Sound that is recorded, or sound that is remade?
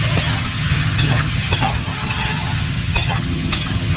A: remade